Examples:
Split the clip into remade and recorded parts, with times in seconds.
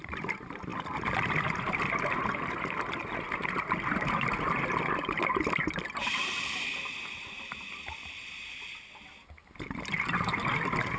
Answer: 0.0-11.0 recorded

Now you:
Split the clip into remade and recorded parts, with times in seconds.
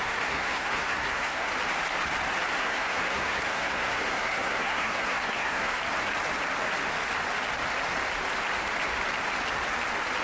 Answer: 0.0-1.5 remade; 1.5-2.5 recorded; 2.5-5.8 remade; 5.8-10.2 recorded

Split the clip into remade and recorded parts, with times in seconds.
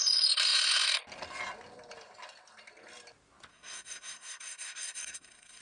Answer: 0.0-3.5 recorded; 3.5-5.6 remade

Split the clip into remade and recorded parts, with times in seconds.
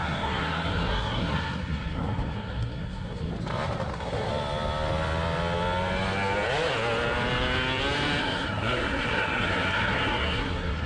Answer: 0.0-3.3 remade; 3.3-3.9 recorded; 3.9-4.3 remade; 4.3-8.2 recorded; 8.2-10.9 remade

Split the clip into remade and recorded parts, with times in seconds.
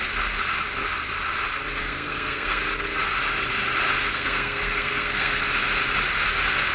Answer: 0.0-1.8 recorded; 1.8-2.6 remade; 2.6-4.1 recorded; 4.1-5.4 remade; 5.4-6.7 recorded